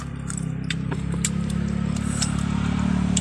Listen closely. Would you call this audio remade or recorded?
remade